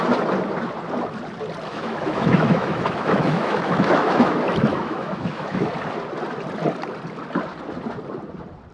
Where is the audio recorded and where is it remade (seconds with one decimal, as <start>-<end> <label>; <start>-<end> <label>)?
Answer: 0.0-1.7 recorded; 1.7-4.3 remade; 4.3-4.7 recorded; 4.7-5.7 remade; 5.7-8.7 recorded